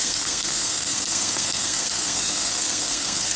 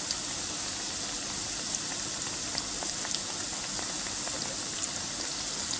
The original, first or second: second